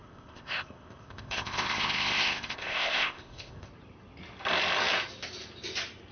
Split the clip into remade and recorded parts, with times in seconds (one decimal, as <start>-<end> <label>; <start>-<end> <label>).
0.0-3.7 remade; 3.7-6.1 recorded